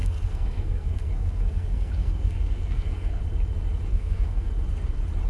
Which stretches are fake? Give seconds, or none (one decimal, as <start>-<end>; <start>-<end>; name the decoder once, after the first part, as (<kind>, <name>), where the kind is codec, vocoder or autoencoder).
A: 0.0-3.2 (codec, SNAC); 3.9-4.5